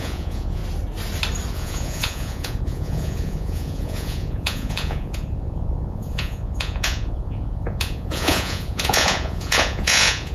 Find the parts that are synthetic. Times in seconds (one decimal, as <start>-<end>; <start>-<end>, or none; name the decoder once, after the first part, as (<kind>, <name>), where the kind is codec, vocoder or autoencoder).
0.0-0.6 (vocoder, Vocos); 1.5-10.3